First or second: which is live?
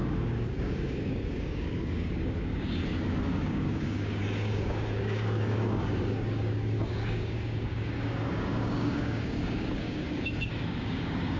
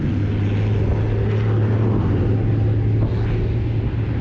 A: second